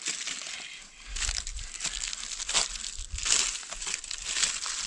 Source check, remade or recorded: recorded